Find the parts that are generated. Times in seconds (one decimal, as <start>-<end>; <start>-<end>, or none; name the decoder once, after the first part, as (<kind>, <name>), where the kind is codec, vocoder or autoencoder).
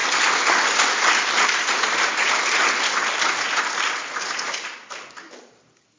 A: none